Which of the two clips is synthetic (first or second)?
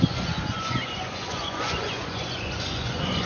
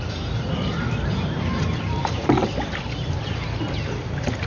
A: first